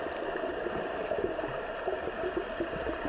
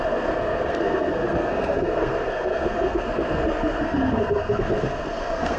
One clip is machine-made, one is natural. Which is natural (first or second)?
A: first